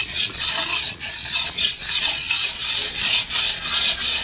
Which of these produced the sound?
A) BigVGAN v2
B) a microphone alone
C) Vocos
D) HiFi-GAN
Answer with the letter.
C